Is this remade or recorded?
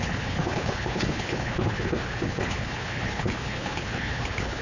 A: remade